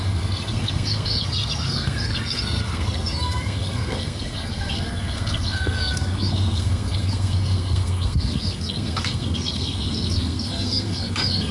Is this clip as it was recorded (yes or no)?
no